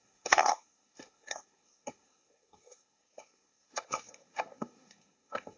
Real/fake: fake